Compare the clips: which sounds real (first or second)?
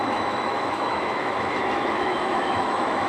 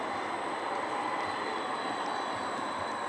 second